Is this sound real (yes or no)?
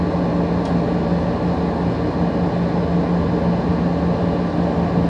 yes